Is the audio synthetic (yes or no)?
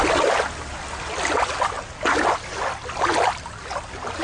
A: no